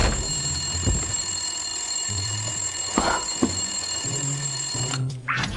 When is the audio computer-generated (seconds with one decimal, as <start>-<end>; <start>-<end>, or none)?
1.1-5.6